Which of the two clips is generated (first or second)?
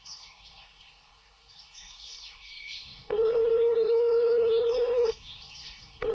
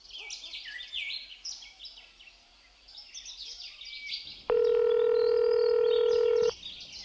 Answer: first